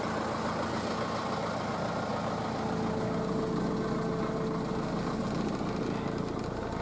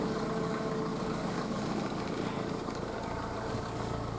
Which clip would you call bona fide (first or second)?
first